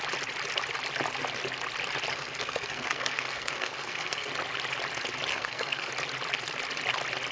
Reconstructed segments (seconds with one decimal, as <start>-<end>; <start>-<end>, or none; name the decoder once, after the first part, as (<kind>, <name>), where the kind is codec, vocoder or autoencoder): 2.1-4.3 (codec, SNAC); 5.3-5.9